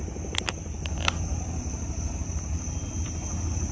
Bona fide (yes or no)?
yes